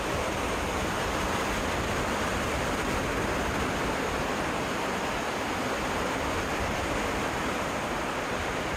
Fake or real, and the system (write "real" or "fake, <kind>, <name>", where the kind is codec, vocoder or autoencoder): real